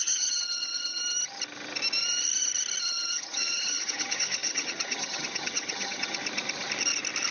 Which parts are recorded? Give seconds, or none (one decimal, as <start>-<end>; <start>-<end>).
1.0-2.8; 6.2-7.3